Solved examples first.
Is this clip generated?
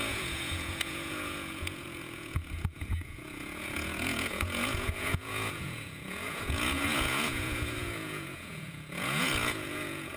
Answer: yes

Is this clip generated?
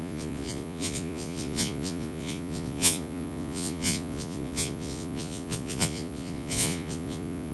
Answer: yes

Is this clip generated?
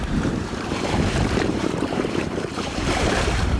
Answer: yes